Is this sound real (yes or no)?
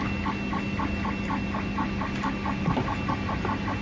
yes